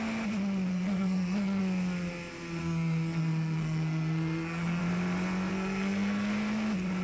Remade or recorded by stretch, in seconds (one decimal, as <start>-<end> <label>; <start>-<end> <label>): 0.0-0.7 recorded; 0.7-1.6 remade; 1.6-2.6 recorded; 2.6-4.8 remade; 4.8-5.5 recorded; 5.5-6.3 remade; 6.3-7.0 recorded